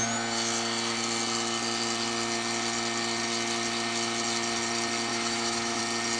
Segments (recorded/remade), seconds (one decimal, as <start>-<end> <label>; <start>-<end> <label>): 0.0-5.1 recorded; 5.1-5.8 remade; 5.8-6.2 recorded